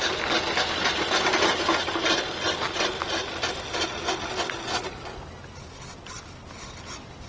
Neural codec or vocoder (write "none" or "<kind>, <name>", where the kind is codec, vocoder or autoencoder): none